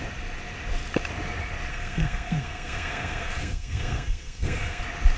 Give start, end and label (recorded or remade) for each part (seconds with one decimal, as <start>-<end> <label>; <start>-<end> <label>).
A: 0.0-1.7 recorded; 1.7-4.8 remade; 4.8-5.2 recorded